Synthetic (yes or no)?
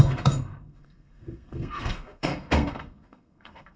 yes